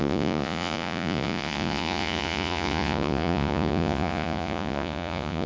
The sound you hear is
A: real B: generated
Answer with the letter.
B